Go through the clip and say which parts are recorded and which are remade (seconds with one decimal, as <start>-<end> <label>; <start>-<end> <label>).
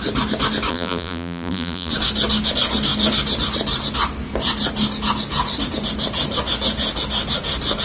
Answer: 0.0-0.7 recorded; 0.7-1.9 remade; 1.9-7.8 recorded